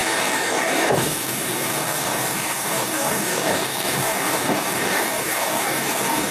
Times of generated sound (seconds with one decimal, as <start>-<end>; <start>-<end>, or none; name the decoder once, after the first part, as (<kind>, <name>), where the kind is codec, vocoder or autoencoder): 0.0-6.3 (codec, DAC)